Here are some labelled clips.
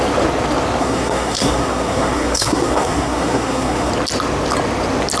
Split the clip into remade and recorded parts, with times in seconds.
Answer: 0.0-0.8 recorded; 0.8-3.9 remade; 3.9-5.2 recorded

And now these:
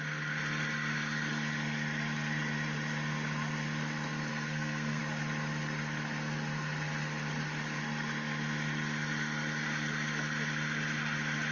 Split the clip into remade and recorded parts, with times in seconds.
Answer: 0.0-4.3 recorded; 4.3-5.0 remade; 5.0-11.5 recorded

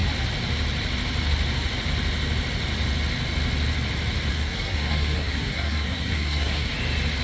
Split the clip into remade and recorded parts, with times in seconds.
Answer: 0.0-4.3 recorded; 4.3-6.7 remade; 6.7-7.2 recorded

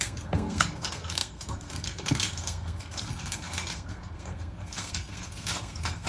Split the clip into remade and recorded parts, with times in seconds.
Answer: 0.0-6.1 remade

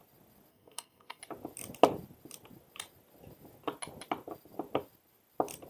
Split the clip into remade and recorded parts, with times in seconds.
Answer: 0.0-0.5 recorded; 0.5-1.2 remade; 1.2-5.7 recorded